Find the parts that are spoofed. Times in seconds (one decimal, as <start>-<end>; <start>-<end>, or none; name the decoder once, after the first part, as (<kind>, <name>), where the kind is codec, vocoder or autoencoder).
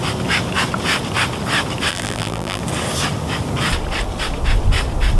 1.9-2.6 (vocoder, BigVGAN v2)